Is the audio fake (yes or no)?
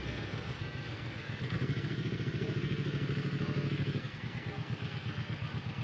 yes